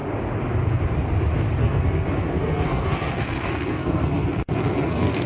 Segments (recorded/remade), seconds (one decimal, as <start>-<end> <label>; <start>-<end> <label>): 0.0-1.6 recorded; 1.6-4.3 remade; 4.3-4.7 recorded; 4.7-5.3 remade